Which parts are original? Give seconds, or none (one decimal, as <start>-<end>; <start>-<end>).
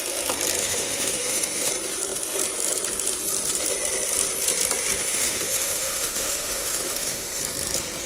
0.0-0.6; 1.7-5.0; 7.4-8.1